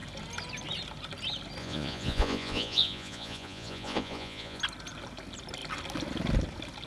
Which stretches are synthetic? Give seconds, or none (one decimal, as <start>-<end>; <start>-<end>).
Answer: 1.6-4.6